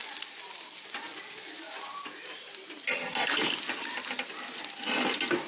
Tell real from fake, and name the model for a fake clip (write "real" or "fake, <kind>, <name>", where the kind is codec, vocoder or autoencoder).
real